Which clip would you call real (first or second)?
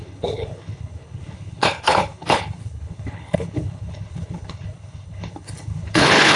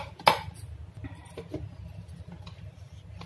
second